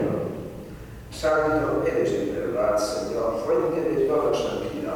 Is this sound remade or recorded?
remade